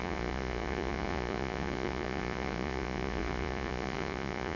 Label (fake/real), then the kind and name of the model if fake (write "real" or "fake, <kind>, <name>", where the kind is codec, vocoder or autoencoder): fake, vocoder, Vocos